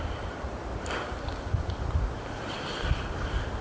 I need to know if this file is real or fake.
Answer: real